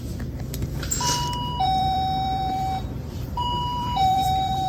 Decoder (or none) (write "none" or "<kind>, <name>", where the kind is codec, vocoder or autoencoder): vocoder, BigVGAN v2